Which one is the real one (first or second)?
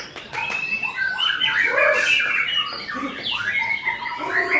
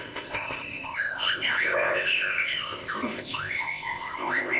first